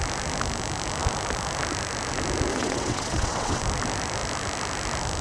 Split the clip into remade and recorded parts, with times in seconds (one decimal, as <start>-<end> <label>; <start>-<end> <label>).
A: 0.0-2.5 recorded; 2.5-3.6 remade; 3.6-5.2 recorded